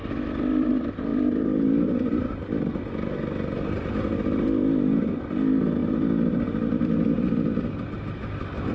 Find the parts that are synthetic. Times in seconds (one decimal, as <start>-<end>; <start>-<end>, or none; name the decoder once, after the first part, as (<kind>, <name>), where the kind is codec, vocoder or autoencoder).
1.1-2.7 (vocoder, BigVGAN v2)